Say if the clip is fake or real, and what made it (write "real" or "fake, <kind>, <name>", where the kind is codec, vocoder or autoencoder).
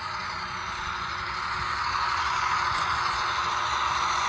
fake, vocoder, Vocos